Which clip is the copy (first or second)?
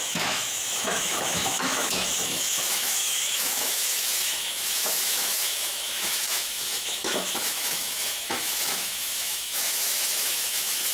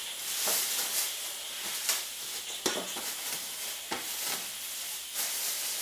first